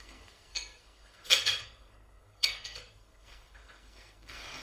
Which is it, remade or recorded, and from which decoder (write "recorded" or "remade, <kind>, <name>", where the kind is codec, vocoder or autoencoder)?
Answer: remade, codec, SNAC